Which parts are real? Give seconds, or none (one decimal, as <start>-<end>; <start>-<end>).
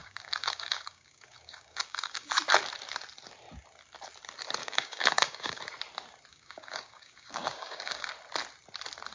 2.3-4.6; 5.6-6.3; 8.1-9.1